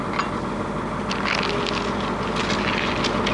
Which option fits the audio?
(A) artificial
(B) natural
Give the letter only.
B